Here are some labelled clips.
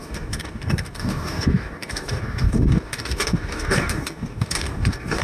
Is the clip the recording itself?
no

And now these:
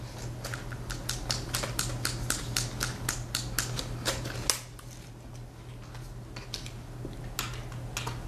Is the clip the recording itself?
yes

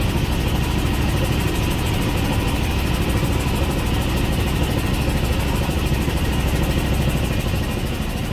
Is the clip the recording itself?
yes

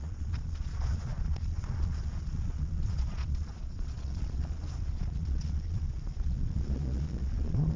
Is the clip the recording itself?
no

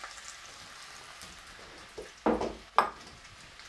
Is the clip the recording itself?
yes